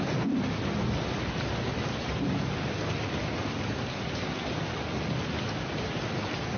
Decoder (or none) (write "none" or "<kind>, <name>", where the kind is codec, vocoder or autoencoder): none